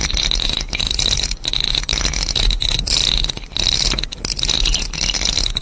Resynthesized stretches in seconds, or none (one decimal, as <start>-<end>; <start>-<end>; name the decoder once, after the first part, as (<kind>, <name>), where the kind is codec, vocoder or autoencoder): none